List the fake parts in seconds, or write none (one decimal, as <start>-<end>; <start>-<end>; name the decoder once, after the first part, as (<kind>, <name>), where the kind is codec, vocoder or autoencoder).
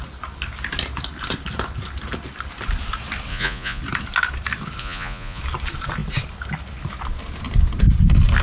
3.3-3.8 (vocoder, Vocos); 4.8-5.4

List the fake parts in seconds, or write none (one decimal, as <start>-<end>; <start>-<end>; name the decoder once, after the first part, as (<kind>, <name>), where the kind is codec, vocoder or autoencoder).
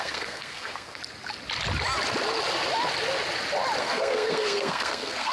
0.0-1.0 (codec, SNAC); 3.8-5.3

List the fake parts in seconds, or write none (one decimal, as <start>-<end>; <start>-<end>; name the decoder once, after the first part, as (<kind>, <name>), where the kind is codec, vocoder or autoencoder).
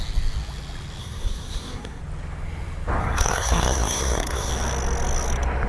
1.0-2.0 (codec, SNAC); 3.0-4.5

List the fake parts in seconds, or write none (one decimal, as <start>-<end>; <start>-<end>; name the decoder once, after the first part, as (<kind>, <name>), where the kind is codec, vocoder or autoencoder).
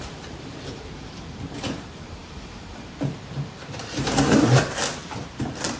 0.0-4.8 (vocoder, BigVGAN v2)